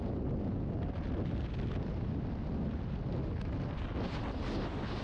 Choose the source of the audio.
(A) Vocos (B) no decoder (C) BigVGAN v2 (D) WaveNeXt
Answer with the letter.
B